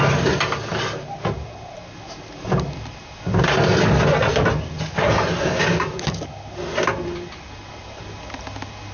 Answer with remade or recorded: recorded